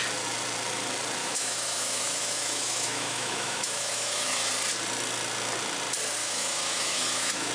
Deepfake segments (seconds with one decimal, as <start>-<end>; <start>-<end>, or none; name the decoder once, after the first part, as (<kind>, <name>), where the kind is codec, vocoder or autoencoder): 1.2-4.5 (autoencoder, DAC-VAE); 6.2-7.5